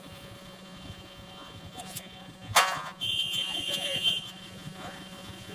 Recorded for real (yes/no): no